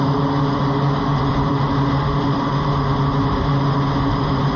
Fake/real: real